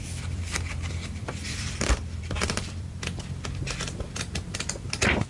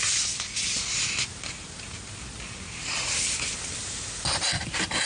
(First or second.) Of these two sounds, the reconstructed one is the first